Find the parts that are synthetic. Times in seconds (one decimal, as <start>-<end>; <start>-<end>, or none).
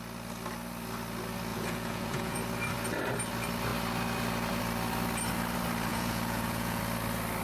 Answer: 1.5-2.4; 5.9-6.8